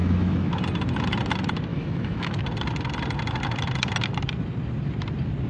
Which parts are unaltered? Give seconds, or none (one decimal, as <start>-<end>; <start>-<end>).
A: 0.5-1.7; 2.4-5.5